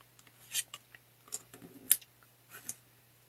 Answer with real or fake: real